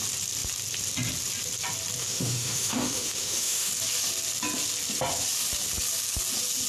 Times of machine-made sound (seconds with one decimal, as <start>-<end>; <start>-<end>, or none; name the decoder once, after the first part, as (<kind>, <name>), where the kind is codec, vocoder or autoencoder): 2.0-3.7 (autoencoder, DAC-VAE)